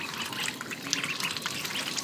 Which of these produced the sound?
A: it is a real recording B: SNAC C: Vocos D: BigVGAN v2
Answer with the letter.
A